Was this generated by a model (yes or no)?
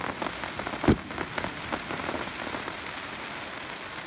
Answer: no